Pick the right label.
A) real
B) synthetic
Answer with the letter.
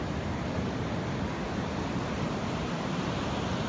A